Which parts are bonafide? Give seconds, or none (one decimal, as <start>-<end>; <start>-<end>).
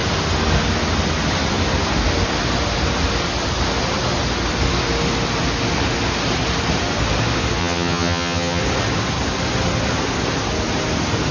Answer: 0.0-7.6; 8.6-11.3